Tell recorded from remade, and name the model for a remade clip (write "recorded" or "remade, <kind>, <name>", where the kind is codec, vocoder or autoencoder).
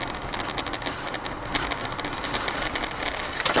recorded